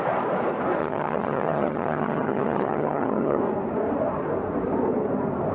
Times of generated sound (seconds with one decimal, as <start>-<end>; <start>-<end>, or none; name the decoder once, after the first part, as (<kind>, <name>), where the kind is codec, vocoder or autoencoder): 0.8-3.4 (vocoder, HiFi-GAN)